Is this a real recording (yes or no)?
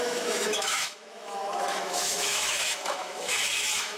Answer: no